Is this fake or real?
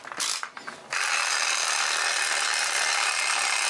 real